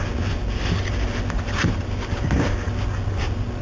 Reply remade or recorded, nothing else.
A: recorded